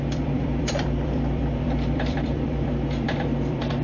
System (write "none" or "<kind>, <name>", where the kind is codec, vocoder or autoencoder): vocoder, BigVGAN v2